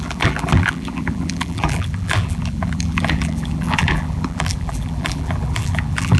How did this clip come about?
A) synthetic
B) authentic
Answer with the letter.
A